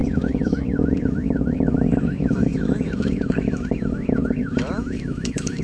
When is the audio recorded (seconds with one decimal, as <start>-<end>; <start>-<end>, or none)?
none